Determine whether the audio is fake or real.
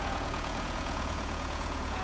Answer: fake